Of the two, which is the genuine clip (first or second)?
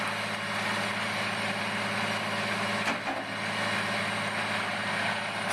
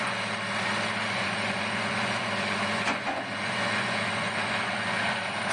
first